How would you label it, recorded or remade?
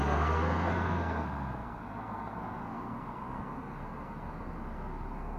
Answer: remade